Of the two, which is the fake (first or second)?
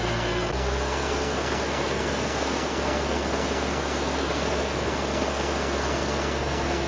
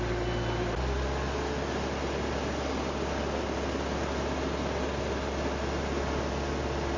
first